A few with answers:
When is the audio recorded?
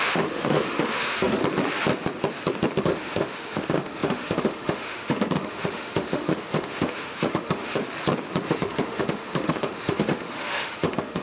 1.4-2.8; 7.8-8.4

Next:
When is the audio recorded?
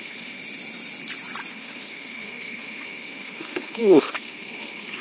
0.4-1.5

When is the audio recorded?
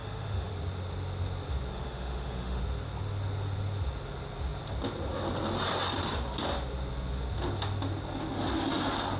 0.5-1.7; 2.6-9.2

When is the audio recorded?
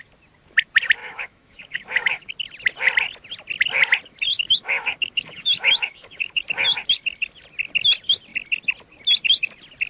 0.0-1.0; 2.3-4.3; 6.4-9.9